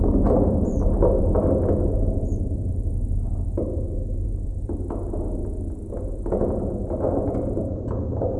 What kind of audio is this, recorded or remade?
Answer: remade